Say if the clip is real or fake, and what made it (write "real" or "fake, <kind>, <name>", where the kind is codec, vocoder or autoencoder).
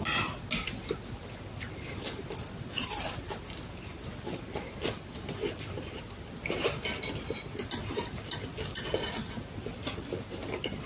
real